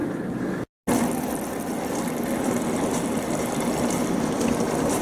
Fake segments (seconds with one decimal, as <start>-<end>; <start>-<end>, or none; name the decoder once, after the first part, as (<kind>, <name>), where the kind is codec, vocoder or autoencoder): none